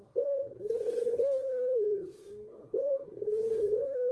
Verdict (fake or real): fake